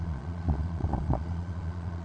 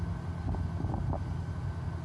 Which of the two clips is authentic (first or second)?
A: second